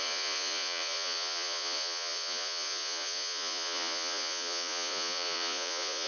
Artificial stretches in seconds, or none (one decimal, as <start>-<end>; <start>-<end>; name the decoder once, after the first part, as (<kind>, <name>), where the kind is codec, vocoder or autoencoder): 0.0-6.1 (vocoder, Vocos)